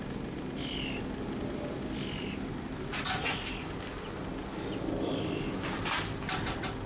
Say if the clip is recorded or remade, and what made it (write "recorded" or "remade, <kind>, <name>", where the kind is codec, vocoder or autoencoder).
recorded